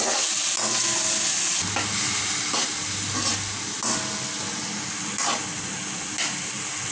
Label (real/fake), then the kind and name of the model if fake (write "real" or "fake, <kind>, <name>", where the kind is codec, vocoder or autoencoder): real